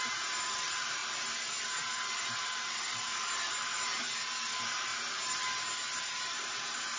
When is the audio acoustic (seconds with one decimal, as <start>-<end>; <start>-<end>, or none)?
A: 3.9-4.5; 4.9-6.0